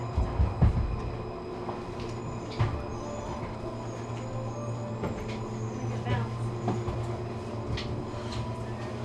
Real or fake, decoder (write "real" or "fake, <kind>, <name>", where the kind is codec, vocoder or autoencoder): real